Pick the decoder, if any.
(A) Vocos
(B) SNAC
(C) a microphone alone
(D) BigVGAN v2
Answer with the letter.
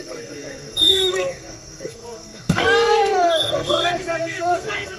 B